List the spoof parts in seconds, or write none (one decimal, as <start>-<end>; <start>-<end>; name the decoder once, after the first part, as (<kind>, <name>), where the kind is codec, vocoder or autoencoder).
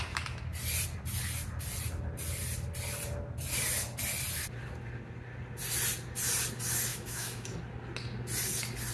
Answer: 6.9-7.5 (autoencoder, DAC-VAE)